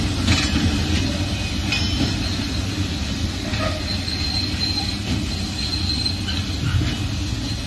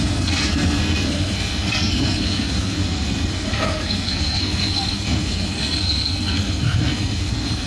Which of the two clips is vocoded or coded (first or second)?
second